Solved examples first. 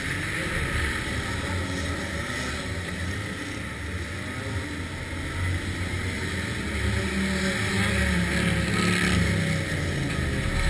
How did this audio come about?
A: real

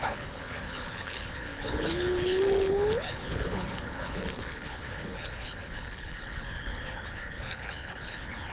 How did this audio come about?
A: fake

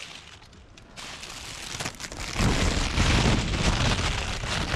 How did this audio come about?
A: real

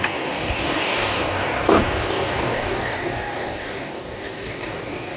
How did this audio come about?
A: fake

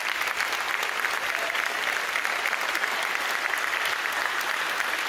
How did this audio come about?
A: real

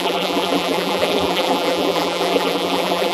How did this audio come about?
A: fake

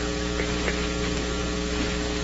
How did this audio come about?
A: real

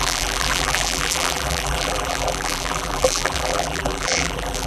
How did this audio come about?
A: fake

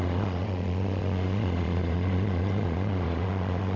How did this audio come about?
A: fake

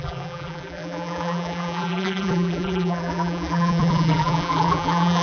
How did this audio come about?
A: fake